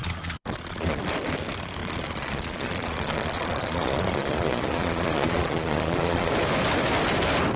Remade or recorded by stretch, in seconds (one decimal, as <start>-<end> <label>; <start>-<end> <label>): 0.0-1.0 remade; 1.0-1.8 recorded; 1.8-6.3 remade; 6.3-7.6 recorded